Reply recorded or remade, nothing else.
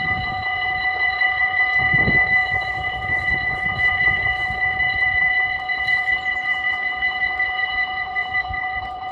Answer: remade